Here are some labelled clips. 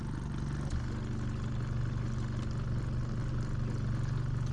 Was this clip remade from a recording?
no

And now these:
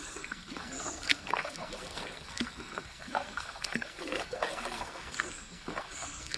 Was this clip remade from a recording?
yes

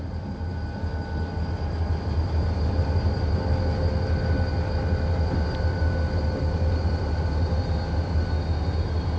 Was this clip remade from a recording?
no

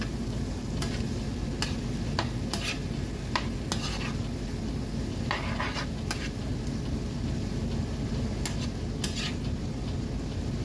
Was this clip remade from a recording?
no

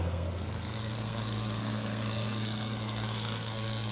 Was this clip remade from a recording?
yes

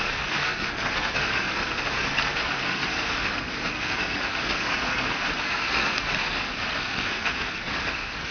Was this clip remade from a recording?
yes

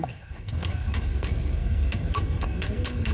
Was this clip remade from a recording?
yes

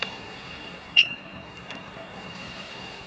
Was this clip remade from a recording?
yes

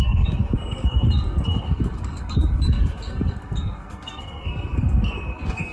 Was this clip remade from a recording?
yes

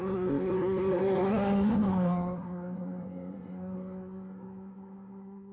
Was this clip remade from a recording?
yes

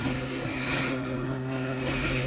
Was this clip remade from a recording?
yes